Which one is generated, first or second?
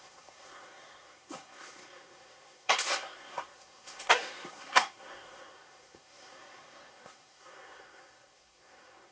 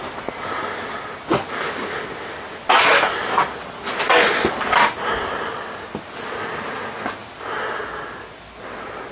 first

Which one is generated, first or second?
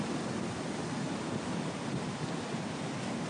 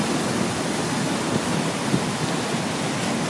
first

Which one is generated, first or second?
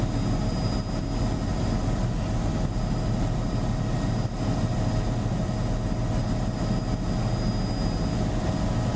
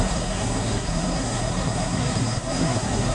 second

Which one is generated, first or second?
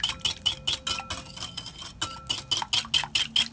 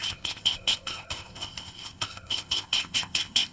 second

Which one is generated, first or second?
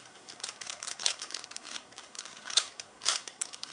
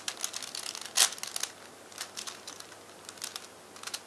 first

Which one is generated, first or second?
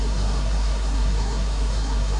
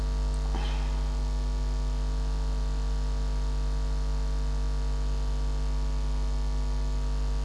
first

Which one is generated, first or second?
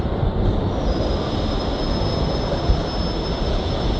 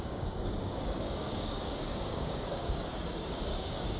second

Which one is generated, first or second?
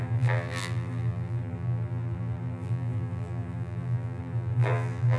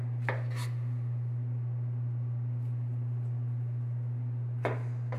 first